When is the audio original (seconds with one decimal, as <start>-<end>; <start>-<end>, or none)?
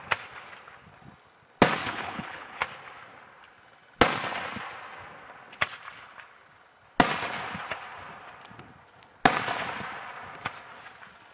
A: 0.0-1.8; 2.6-11.3